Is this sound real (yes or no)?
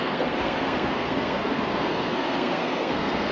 no